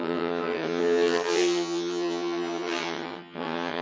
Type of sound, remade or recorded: remade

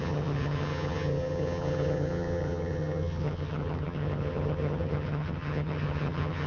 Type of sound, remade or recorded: remade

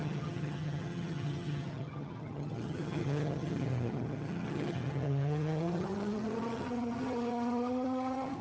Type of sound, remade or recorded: remade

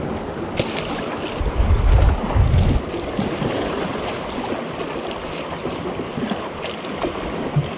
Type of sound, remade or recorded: recorded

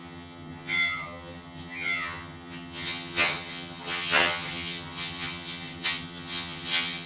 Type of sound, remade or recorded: remade